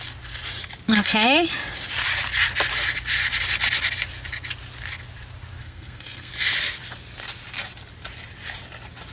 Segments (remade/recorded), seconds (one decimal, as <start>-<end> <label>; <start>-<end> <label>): 0.0-5.6 recorded; 5.6-6.3 remade; 6.3-9.1 recorded